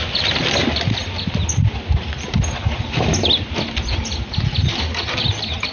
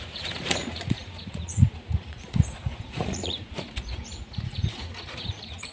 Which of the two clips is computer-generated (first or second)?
second